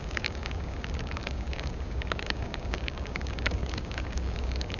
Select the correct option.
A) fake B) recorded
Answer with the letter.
A